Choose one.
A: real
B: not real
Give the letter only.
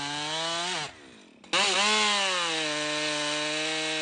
A